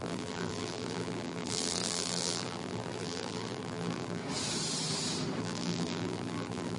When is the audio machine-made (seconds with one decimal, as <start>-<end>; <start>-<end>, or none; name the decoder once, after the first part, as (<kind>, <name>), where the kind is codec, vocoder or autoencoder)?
0.0-4.2 (vocoder, BigVGAN v2); 5.4-6.8